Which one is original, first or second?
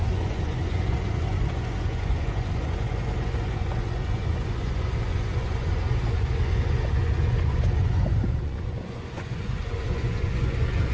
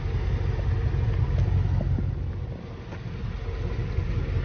second